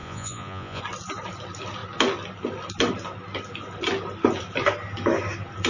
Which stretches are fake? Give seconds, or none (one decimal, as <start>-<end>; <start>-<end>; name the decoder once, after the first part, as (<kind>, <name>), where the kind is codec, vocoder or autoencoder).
0.0-0.8 (vocoder, Vocos)